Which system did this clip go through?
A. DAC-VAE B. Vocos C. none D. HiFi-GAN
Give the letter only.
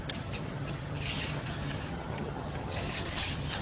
D